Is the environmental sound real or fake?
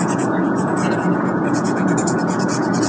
fake